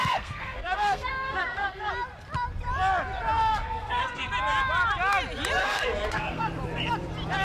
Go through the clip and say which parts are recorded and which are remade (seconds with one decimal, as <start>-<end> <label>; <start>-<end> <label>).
0.0-1.9 remade; 1.9-3.5 recorded; 3.5-4.3 remade; 4.3-5.6 recorded; 5.6-6.5 remade; 6.5-7.4 recorded